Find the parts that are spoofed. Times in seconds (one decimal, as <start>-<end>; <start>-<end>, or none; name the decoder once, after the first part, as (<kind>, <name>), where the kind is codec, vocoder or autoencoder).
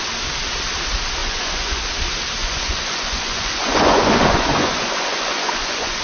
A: 1.2-1.8 (vocoder, Vocos); 2.4-6.0